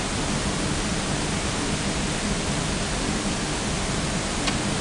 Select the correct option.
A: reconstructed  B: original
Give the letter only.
B